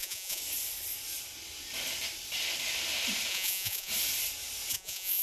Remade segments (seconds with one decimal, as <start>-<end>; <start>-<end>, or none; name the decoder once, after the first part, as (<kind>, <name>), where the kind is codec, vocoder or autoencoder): 0.0-0.4 (vocoder, Vocos); 3.3-3.9; 4.7-5.2